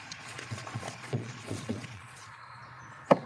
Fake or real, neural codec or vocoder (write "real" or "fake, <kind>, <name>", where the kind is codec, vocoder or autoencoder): fake, vocoder, Vocos